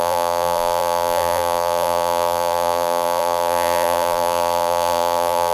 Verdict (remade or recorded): remade